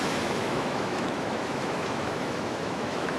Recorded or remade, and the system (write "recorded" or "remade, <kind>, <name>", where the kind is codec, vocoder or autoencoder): remade, autoencoder, DAC-VAE